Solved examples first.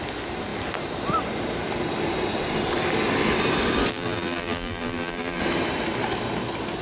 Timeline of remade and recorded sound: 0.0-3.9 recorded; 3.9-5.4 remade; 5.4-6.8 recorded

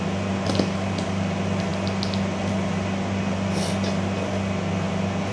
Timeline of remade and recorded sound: 0.0-5.3 recorded

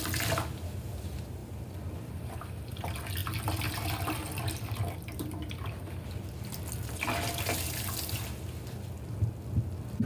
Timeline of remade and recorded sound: 0.0-10.1 recorded

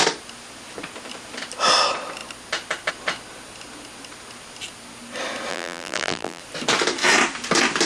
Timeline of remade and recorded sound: 0.0-5.5 recorded; 5.5-6.4 remade; 6.4-7.9 recorded

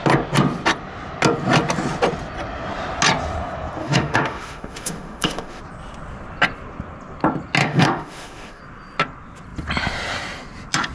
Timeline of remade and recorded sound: 0.0-3.8 recorded; 3.8-5.6 remade; 5.6-7.6 recorded; 7.6-8.6 remade; 8.6-10.9 recorded

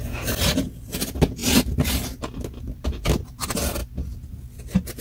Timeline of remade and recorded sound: 0.0-5.0 recorded

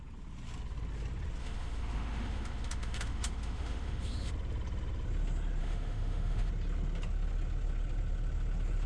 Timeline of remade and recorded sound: 0.0-1.4 recorded; 1.4-4.3 remade; 4.3-5.6 recorded; 5.6-6.5 remade; 6.5-8.9 recorded